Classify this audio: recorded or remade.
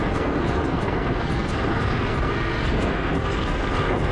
remade